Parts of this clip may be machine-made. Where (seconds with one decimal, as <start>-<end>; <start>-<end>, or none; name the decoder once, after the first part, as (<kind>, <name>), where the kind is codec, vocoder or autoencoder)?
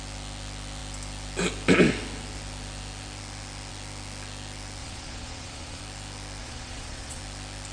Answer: 4.8-5.8 (vocoder, Vocos); 6.4-7.2